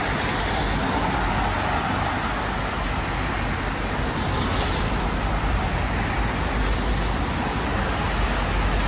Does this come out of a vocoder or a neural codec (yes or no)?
no